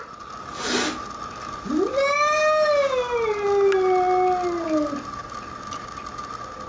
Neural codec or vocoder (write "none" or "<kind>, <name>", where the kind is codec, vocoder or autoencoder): none